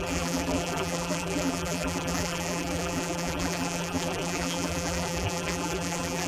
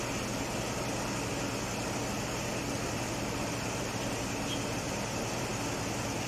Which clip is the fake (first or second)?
first